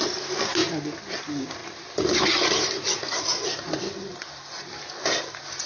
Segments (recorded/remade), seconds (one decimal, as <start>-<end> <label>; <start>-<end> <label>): 0.0-1.6 recorded; 1.6-2.8 remade; 2.8-5.7 recorded